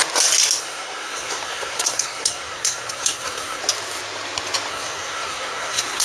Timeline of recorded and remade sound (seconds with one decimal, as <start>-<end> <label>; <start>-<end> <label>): 0.0-0.6 recorded; 0.6-3.6 remade; 3.6-4.7 recorded; 4.7-6.0 remade